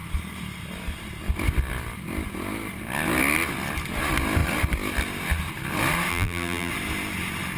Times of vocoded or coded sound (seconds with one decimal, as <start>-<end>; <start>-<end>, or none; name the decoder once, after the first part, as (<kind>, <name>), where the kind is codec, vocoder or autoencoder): 6.1-6.7 (vocoder, BigVGAN v2)